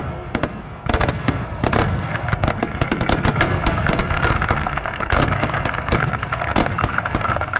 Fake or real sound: fake